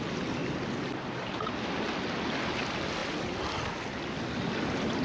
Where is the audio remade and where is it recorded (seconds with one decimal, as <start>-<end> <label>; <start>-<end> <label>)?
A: 0.0-5.0 recorded